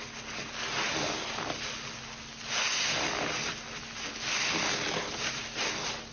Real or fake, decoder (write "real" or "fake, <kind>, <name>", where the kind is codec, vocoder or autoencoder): real